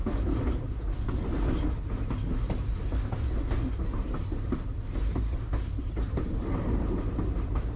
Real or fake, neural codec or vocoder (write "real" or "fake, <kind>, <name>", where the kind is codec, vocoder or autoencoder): real